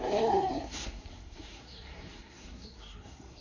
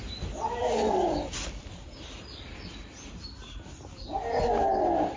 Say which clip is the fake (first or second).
first